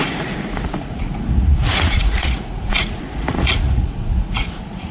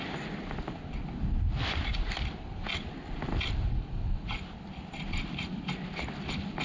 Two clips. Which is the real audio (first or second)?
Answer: second